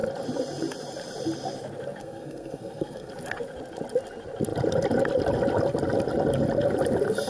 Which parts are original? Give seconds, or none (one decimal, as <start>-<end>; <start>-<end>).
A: 0.0-2.0; 3.1-7.3